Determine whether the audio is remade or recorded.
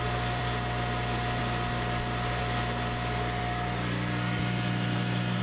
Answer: recorded